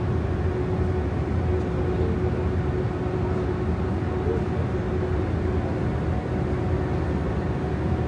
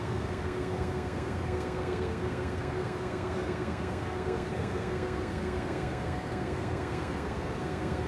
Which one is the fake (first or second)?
second